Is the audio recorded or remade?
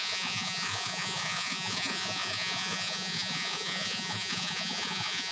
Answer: remade